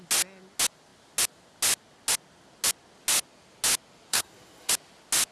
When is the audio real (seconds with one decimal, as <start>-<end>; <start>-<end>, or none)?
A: 0.0-4.1; 4.7-5.3